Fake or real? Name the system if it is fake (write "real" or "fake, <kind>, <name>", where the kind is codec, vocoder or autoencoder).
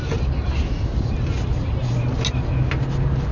real